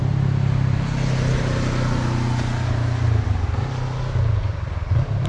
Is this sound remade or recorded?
recorded